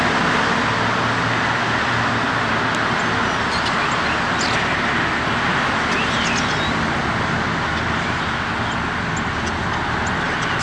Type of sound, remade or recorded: recorded